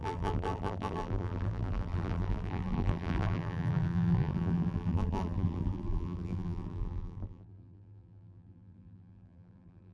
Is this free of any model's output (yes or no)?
no